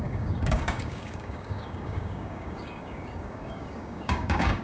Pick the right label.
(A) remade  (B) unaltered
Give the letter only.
A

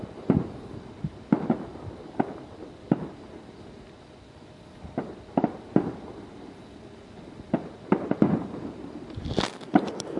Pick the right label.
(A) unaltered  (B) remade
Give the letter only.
A